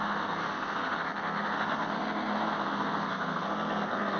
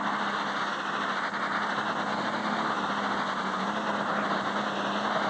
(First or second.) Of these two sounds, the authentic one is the second